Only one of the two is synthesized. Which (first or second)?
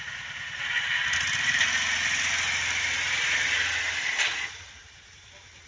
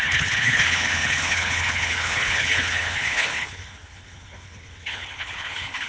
second